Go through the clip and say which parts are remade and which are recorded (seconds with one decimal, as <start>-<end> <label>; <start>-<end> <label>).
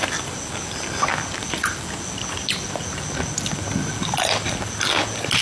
0.0-5.4 recorded